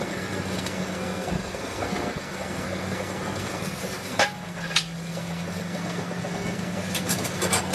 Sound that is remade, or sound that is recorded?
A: remade